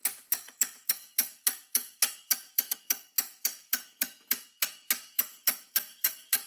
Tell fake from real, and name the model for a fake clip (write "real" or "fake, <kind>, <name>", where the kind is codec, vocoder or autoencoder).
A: fake, autoencoder, DAC-VAE